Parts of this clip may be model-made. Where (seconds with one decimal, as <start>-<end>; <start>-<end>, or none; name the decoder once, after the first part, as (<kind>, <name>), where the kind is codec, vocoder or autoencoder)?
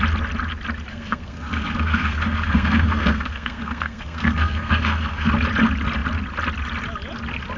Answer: 0.9-5.3 (codec, SNAC)